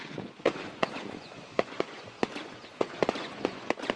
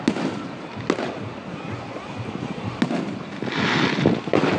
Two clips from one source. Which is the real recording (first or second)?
second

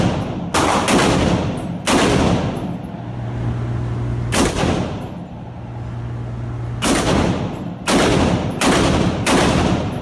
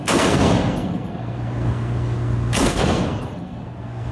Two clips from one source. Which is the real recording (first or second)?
first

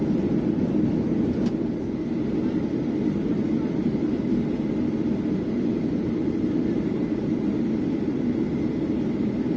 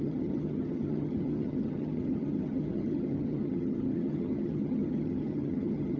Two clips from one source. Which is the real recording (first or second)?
first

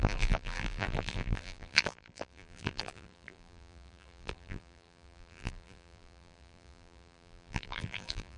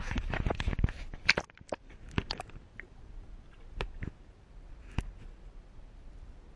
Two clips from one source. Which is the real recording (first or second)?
second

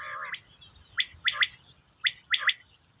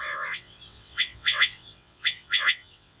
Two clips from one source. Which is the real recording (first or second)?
first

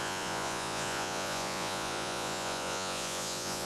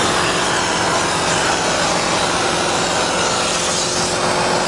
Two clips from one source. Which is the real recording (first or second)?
second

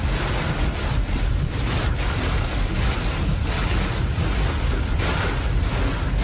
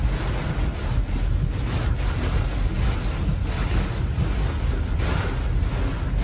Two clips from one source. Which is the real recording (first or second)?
second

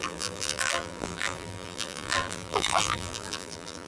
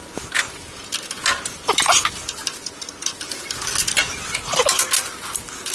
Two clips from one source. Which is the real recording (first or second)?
second